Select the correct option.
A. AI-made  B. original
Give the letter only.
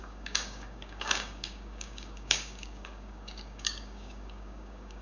A